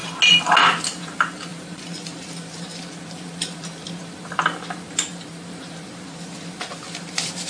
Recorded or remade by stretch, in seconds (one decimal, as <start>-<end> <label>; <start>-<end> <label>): 0.0-7.5 recorded